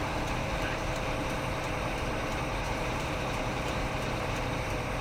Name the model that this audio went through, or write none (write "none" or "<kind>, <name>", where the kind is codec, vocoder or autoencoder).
vocoder, BigVGAN v2